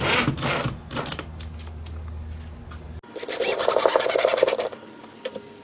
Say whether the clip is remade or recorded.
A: recorded